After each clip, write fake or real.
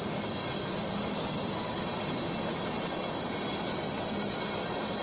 real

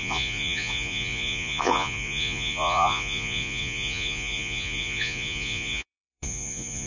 fake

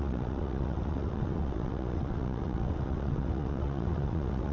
fake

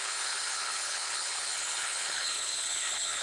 fake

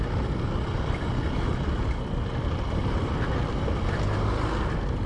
real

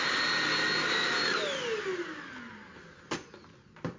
real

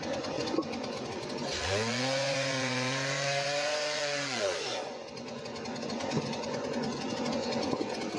fake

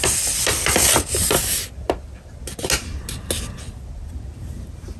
real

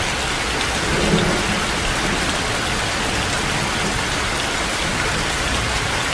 real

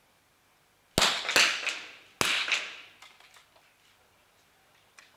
real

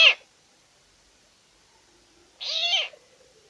real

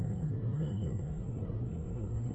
fake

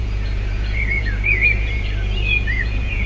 fake